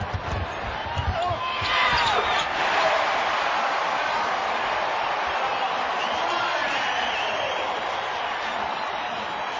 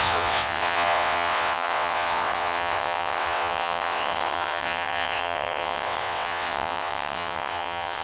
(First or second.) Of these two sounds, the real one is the first